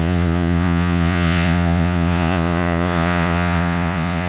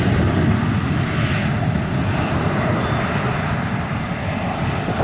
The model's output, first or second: first